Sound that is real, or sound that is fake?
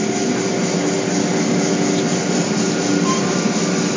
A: real